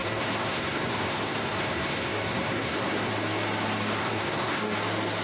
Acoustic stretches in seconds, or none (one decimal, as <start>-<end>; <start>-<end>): 3.1-4.0; 4.6-5.2